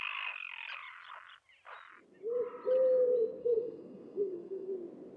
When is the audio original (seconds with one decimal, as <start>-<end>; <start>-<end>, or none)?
0.0-3.4; 4.7-5.2